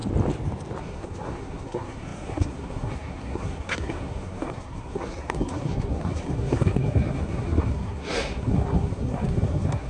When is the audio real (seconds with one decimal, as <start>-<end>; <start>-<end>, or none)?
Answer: 0.0-0.8